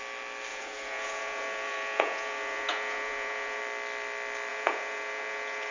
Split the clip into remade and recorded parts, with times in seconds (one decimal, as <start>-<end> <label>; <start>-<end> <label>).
0.0-0.5 recorded; 0.5-3.6 remade; 3.6-4.5 recorded; 4.5-5.7 remade